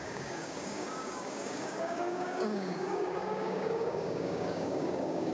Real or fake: fake